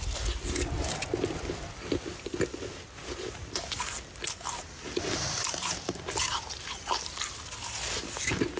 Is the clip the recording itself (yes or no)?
yes